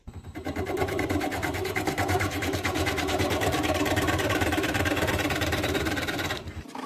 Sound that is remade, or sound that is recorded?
remade